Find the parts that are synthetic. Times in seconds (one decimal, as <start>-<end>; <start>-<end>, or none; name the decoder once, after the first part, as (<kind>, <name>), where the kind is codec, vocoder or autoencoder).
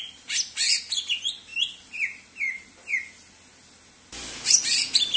none